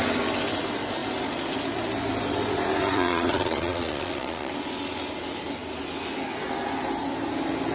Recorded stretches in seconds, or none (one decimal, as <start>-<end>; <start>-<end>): 0.0-2.8; 4.5-7.7